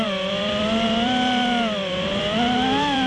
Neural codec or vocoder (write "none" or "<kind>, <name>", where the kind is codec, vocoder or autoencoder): vocoder, BigVGAN v2